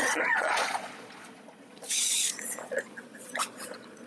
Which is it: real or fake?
fake